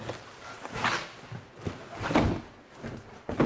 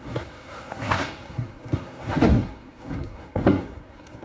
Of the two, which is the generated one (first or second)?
second